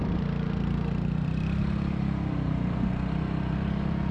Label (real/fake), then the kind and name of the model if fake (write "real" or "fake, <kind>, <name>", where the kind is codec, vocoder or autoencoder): fake, vocoder, BigVGAN v2